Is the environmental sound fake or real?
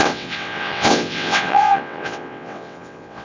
fake